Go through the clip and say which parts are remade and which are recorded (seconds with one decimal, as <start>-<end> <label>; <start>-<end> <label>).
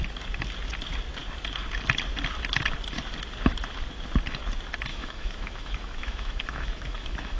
0.0-4.9 recorded; 4.9-7.4 remade